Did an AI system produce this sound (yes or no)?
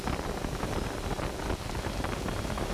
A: no